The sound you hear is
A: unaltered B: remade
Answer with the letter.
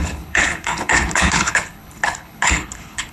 B